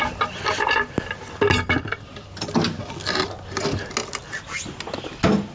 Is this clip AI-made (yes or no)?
no